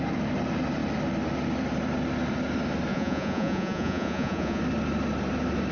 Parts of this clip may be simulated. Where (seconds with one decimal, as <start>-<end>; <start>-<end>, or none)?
2.9-4.6

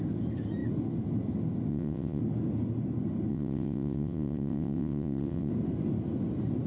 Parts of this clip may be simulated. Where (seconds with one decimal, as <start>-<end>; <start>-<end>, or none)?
1.7-2.2; 3.3-5.5

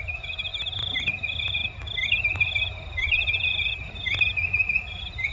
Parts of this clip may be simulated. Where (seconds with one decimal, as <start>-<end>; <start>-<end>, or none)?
0.0-1.6; 2.2-5.3

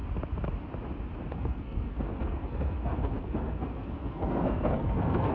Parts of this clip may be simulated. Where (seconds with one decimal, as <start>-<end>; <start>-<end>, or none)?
1.3-5.3